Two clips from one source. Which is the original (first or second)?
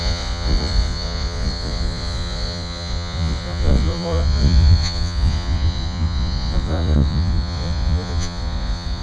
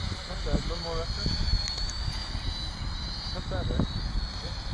second